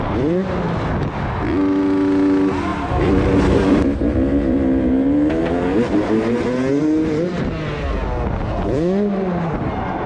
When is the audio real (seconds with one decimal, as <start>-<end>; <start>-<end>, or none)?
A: 0.0-2.7; 6.8-10.1